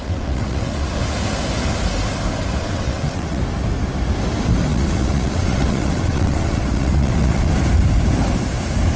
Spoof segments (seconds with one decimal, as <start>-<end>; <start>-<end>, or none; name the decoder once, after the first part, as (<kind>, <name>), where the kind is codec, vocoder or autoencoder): 0.0-1.0 (vocoder, WaveNeXt); 2.6-3.4; 4.7-7.5